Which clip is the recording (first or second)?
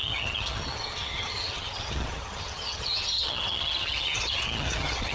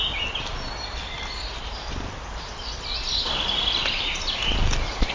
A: second